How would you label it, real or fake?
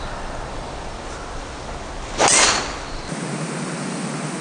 real